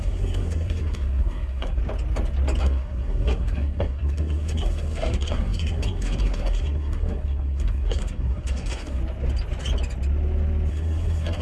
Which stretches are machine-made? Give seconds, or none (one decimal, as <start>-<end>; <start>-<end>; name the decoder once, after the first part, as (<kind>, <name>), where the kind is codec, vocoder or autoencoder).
0.0-1.8 (codec, SNAC); 2.6-9.0; 10.7-11.4